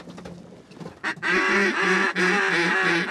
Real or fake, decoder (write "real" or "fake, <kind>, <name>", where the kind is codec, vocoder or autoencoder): real